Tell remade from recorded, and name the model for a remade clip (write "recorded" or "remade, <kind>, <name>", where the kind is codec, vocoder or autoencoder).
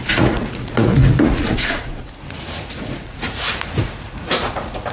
remade, vocoder, Vocos